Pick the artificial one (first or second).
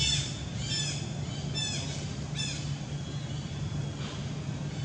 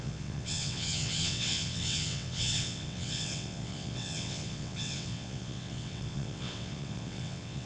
second